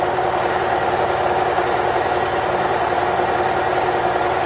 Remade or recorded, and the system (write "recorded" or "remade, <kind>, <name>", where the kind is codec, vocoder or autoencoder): recorded